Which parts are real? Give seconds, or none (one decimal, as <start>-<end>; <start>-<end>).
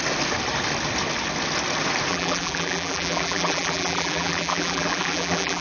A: 0.0-2.1